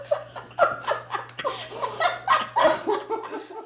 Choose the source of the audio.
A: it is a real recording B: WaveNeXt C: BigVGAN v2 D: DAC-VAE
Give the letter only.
A